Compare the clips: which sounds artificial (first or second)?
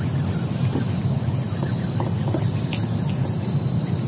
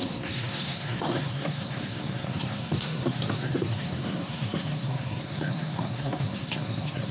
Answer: second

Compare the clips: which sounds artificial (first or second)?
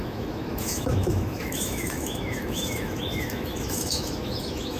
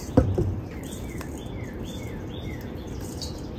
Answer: first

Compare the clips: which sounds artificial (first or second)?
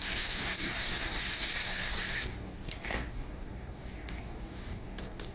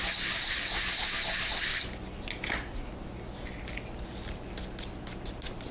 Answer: first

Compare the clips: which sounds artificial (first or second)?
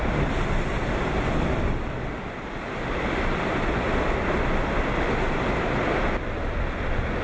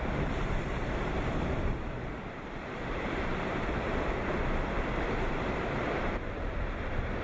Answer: second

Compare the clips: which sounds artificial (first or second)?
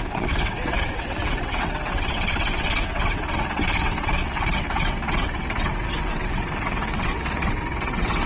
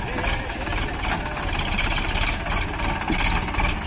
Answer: first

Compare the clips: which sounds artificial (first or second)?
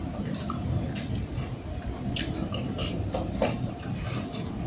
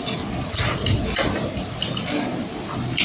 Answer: first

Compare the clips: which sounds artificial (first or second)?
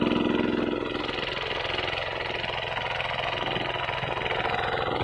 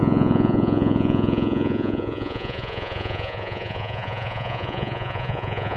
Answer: second